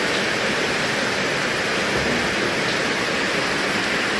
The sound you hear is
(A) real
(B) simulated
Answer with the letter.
A